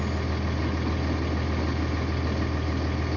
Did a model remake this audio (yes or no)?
no